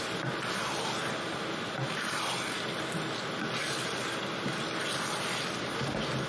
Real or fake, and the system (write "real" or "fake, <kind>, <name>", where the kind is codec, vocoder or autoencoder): real